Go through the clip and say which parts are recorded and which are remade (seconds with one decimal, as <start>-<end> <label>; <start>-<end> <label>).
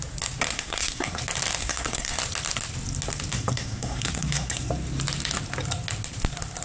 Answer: 0.0-0.5 recorded; 0.5-1.2 remade; 1.2-1.6 recorded; 1.6-2.2 remade; 2.2-3.3 recorded; 3.3-4.7 remade; 4.7-6.6 recorded